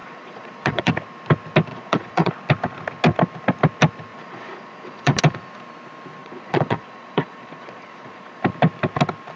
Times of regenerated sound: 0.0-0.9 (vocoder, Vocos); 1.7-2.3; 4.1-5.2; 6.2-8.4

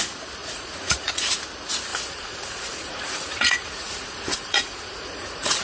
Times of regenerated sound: 0.4-1.4 (vocoder, Vocos); 1.9-5.6

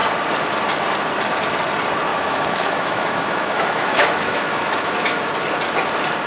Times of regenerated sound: 2.1-5.2 (autoencoder, DAC-VAE)

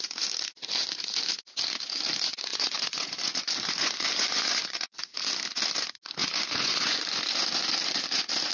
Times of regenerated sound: 2.5-5.0 (vocoder, Vocos); 6.2-7.2